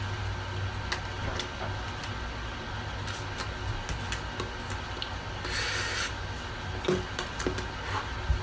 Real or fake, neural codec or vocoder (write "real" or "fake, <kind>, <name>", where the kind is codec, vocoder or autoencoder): real